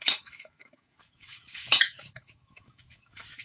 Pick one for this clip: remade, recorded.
remade